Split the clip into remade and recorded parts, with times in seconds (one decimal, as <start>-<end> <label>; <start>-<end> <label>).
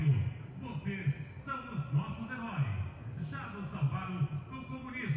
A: 0.0-0.8 remade; 0.8-5.2 recorded